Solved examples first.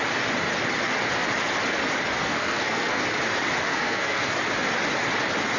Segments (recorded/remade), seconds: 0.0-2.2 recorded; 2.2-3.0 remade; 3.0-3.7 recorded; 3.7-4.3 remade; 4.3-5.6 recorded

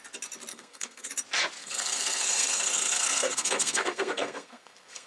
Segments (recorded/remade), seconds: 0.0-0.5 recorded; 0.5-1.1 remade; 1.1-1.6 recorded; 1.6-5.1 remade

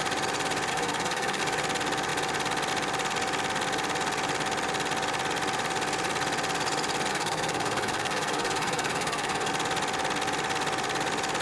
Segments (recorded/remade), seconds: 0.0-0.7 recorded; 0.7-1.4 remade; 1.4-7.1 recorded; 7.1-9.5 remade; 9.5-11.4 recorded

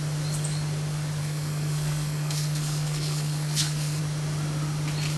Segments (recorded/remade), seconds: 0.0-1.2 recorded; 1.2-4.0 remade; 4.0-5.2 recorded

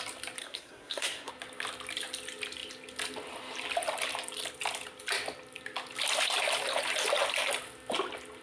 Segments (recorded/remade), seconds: 0.0-0.4 recorded; 0.4-1.3 remade; 1.3-8.4 recorded

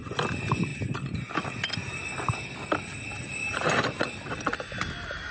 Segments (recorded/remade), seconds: 0.0-5.3 recorded